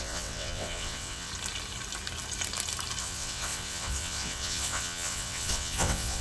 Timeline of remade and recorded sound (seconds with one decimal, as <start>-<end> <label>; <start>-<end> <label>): 0.0-1.3 remade; 1.3-3.0 recorded; 3.0-6.2 remade